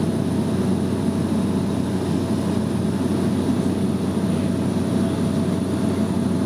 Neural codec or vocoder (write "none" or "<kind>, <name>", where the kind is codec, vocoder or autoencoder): none